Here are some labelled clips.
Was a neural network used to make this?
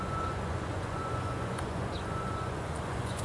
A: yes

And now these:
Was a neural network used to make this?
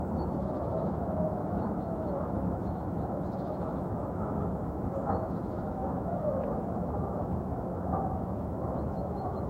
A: yes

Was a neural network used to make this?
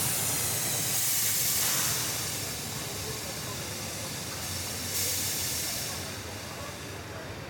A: no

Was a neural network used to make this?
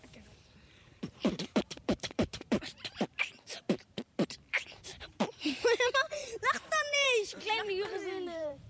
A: yes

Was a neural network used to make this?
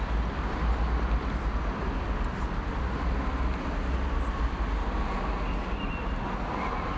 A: no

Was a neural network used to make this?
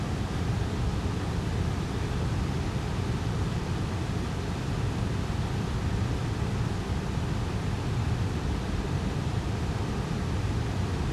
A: no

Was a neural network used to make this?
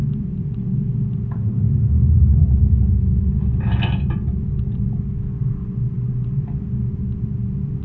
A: no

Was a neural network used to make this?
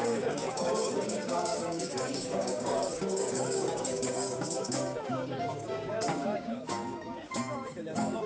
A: yes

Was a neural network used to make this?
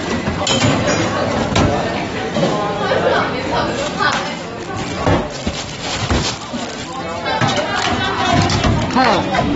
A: no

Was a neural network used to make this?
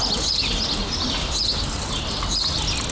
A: no